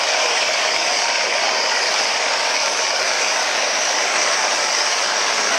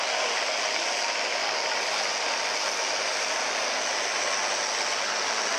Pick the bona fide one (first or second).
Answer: second